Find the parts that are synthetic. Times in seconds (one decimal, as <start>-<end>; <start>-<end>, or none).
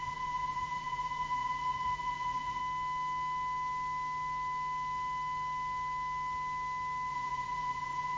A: 0.0-2.6; 7.1-8.2